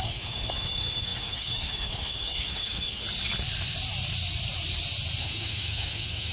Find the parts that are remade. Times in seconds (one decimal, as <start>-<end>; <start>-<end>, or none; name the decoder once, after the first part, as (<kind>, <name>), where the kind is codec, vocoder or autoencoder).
0.0-3.0 (autoencoder, DAC-VAE); 5.2-6.3